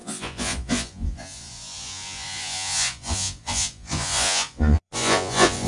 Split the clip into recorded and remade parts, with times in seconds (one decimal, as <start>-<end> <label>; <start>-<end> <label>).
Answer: 0.0-5.7 remade